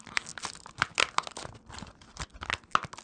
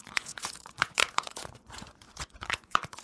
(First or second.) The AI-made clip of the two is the second